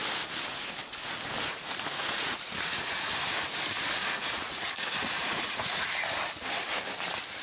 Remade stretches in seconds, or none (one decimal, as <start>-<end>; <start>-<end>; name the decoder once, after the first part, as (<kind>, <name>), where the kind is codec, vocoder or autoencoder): 1.5-3.1 (vocoder, Vocos); 4.0-6.2